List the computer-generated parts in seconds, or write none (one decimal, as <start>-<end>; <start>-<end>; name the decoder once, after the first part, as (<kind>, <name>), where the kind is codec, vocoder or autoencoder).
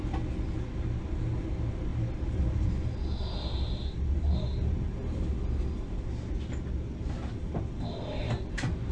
none